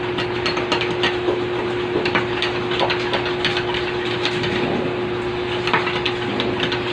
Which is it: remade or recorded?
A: recorded